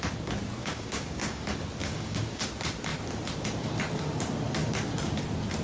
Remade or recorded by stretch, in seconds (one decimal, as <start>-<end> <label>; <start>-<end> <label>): 0.0-0.6 recorded; 0.6-1.4 remade; 1.4-1.8 recorded; 1.8-2.4 remade; 2.4-5.6 recorded